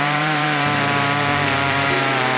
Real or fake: fake